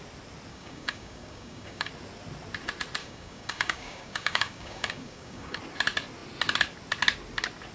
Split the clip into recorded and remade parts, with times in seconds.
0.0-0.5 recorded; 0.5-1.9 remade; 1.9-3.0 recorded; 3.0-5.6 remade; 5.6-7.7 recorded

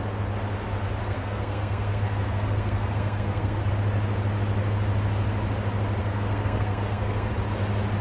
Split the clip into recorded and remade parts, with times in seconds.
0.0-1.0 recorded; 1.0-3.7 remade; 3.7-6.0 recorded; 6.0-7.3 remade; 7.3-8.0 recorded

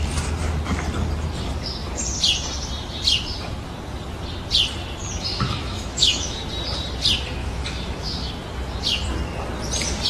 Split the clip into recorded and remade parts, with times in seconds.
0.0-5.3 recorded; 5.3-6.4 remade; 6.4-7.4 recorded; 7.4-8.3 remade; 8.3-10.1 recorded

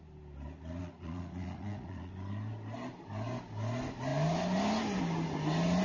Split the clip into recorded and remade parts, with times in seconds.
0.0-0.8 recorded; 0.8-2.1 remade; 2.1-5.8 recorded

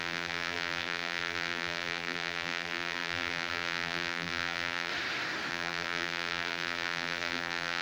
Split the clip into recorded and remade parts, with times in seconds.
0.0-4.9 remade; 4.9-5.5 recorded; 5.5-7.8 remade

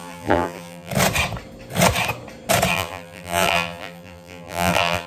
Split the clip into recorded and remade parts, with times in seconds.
0.0-0.9 remade; 0.9-2.7 recorded; 2.7-5.1 remade

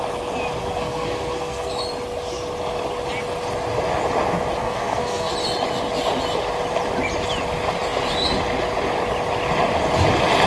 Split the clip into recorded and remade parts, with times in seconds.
0.0-0.6 recorded; 0.6-1.7 remade; 1.7-4.6 recorded; 4.6-5.3 remade; 5.3-10.5 recorded